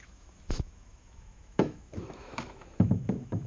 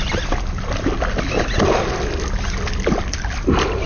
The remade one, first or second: first